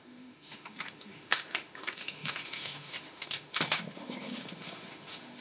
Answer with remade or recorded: remade